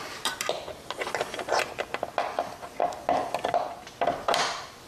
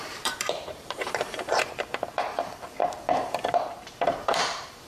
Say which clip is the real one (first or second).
first